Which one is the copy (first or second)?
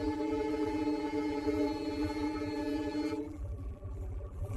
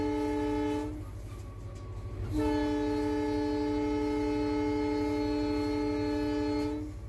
first